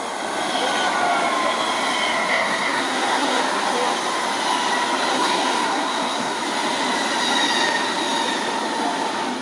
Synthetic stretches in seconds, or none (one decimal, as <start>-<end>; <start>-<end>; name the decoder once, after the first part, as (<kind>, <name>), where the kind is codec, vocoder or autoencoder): 2.3-3.4 (codec, SNAC); 5.1-6.4